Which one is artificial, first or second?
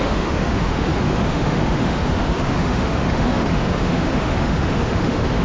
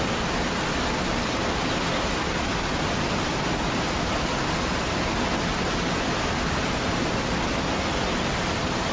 first